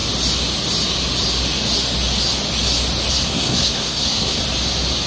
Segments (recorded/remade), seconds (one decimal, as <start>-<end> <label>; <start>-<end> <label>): 0.0-3.1 recorded; 3.1-4.4 remade; 4.4-5.1 recorded